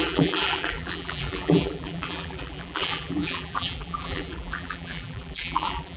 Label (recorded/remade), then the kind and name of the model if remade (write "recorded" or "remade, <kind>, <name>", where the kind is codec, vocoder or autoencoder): remade, vocoder, BigVGAN v2